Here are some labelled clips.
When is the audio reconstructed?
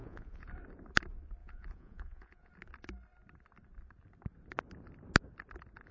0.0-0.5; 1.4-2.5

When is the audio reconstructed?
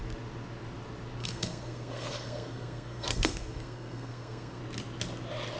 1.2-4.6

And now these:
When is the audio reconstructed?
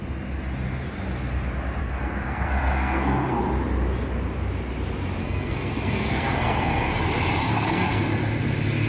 1.8-3.4; 5.2-7.0; 7.4-8.0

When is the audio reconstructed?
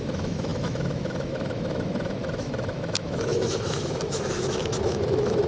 0.0-5.5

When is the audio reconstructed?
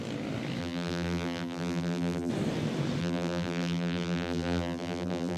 0.6-2.3; 3.0-5.4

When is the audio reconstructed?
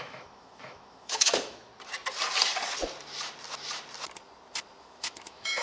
0.0-1.7; 4.8-5.6